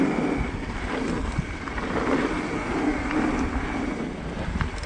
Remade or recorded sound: recorded